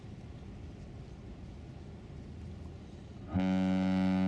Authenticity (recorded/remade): recorded